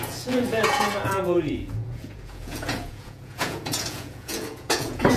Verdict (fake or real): fake